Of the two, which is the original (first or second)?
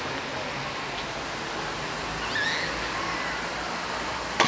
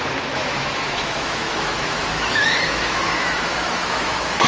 first